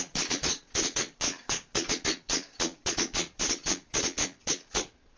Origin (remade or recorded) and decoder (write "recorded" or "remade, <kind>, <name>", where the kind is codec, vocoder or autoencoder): remade, vocoder, Vocos